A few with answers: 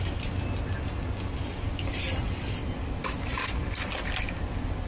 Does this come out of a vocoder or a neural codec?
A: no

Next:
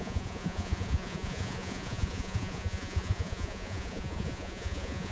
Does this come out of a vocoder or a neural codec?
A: yes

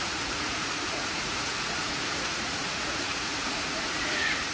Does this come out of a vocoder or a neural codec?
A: yes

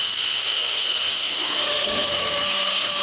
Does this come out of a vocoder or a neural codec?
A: yes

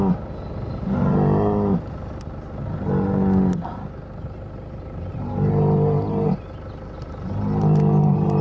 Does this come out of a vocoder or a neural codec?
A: no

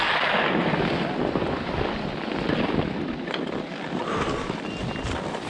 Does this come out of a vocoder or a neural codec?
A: no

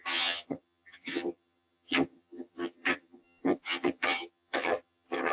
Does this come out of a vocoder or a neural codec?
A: yes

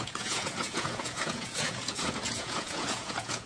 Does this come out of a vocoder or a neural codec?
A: yes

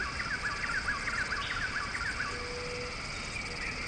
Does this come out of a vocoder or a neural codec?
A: no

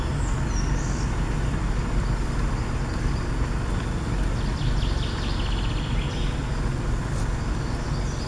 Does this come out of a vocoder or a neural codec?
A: no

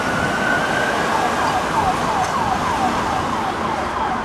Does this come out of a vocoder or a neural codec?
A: no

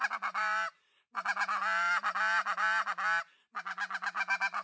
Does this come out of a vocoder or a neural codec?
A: no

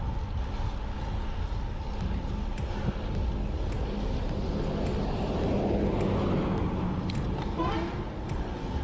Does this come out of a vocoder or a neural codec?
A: no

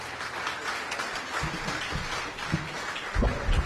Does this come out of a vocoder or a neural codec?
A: no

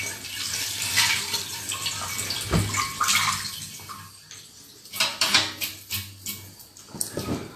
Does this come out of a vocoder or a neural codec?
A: no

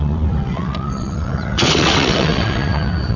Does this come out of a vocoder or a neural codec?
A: yes